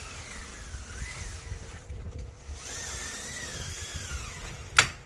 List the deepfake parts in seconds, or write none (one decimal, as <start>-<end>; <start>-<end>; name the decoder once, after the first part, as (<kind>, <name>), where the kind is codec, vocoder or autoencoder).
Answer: 0.0-0.5 (vocoder, BigVGAN v2); 1.0-2.5